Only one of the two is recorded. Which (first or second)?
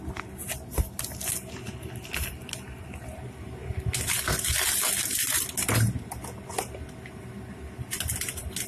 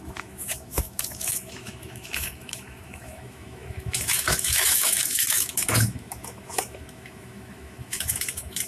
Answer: first